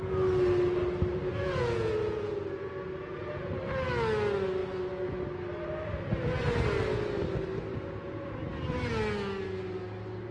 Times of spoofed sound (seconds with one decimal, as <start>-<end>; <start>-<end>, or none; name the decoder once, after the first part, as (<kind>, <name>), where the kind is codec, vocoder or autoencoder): 1.1-3.6 (vocoder, Vocos); 7.7-8.5